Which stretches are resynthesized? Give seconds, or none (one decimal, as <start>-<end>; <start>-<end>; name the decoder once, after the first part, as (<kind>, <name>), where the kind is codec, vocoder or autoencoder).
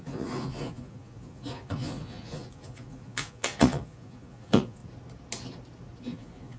0.0-4.8 (vocoder, Vocos); 6.0-6.6